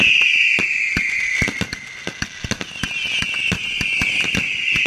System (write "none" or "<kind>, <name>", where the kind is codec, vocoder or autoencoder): none